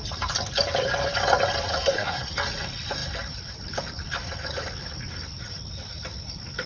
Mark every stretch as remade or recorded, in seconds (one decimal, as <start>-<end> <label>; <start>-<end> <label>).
0.0-1.7 recorded; 1.7-2.3 remade; 2.3-6.7 recorded